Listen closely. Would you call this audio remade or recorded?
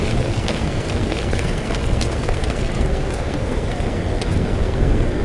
remade